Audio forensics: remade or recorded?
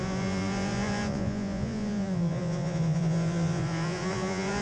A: remade